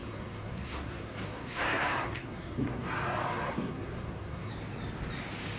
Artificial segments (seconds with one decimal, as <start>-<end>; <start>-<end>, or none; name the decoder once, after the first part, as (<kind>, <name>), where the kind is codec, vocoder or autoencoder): 0.0-2.9 (codec, SNAC); 3.5-4.5